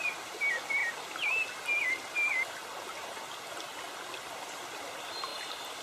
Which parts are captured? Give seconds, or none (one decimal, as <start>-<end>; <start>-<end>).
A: 0.0-5.3